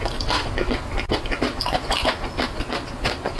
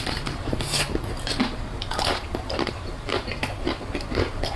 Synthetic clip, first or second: second